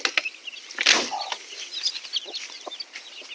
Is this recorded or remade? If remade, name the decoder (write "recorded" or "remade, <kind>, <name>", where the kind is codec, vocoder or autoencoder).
recorded